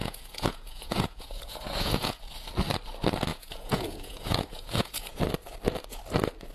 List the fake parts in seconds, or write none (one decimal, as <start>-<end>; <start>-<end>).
0.0-2.2; 3.3-5.2